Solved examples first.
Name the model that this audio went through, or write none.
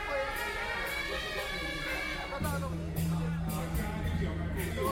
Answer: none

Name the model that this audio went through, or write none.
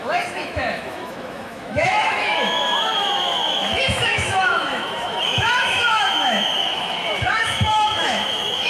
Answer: autoencoder, DAC-VAE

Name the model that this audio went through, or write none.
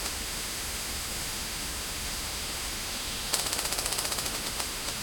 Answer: autoencoder, DAC-VAE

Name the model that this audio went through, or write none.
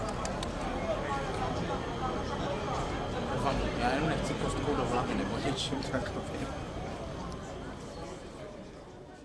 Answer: none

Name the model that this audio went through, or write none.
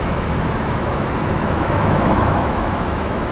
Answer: autoencoder, DAC-VAE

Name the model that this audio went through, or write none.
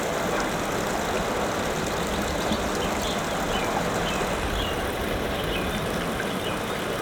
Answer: none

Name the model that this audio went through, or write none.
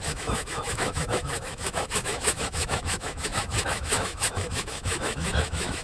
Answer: autoencoder, DAC-VAE